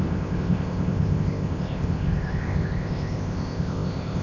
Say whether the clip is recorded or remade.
remade